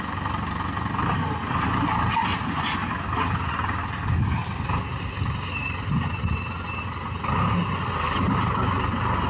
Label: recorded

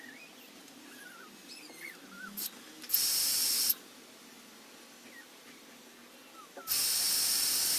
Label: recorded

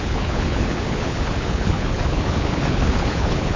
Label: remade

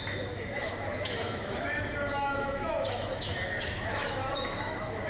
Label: remade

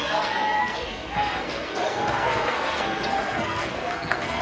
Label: remade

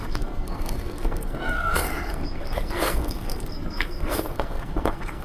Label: remade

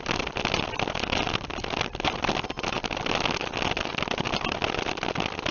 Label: recorded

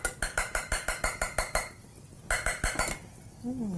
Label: recorded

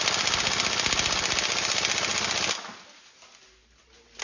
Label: recorded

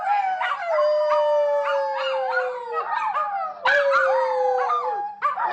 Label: recorded